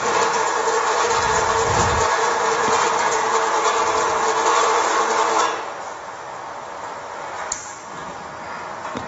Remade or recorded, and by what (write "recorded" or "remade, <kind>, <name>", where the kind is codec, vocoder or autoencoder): recorded